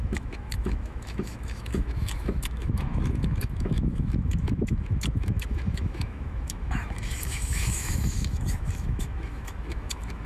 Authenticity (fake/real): fake